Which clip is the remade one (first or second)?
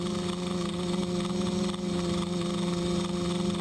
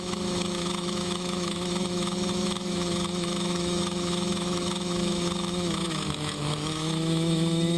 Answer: second